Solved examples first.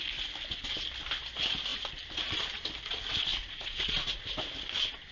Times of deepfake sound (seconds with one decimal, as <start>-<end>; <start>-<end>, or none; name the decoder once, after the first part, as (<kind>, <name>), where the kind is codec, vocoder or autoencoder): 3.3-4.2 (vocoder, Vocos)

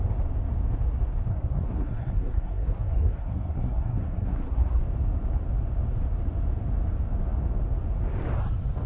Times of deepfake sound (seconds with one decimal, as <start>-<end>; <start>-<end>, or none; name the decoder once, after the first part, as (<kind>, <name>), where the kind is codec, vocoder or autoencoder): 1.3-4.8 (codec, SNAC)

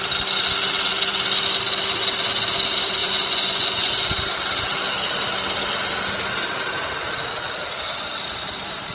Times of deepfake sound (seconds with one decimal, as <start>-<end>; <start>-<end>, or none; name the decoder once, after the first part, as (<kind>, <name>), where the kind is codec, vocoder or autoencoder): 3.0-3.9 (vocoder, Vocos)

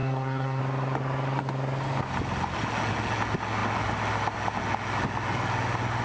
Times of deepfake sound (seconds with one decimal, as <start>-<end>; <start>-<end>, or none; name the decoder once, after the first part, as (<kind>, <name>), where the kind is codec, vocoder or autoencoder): 0.0-0.6 (codec, SNAC)

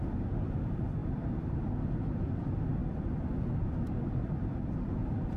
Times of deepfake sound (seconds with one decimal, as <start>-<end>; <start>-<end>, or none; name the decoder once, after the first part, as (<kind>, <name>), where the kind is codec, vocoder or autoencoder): 0.0-1.0 (vocoder, BigVGAN v2); 2.1-5.4

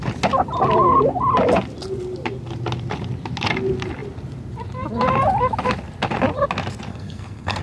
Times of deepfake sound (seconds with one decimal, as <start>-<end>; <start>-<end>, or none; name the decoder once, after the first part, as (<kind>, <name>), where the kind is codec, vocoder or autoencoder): 6.9-7.6 (codec, SNAC)

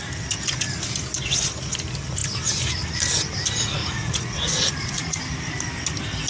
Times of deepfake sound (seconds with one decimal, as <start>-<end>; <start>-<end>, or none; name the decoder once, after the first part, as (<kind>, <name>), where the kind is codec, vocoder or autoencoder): 3.8-5.2 (vocoder, Vocos)

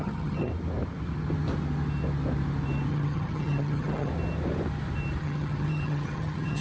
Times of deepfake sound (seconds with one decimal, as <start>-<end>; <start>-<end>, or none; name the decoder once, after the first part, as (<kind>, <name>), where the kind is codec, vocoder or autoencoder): 0.0-0.5 (vocoder, HiFi-GAN); 2.9-4.1; 5.2-6.6